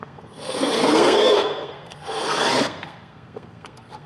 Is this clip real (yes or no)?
no